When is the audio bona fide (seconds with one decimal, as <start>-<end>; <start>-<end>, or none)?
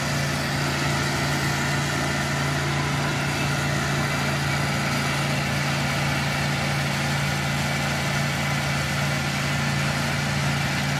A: 0.0-11.0